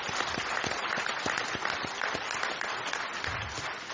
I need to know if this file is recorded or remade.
recorded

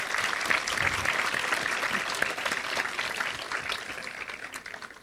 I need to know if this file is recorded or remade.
recorded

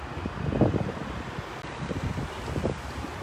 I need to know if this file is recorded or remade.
recorded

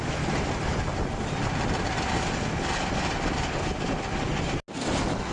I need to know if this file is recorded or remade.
recorded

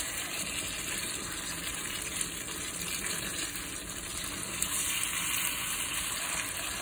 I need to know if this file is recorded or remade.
recorded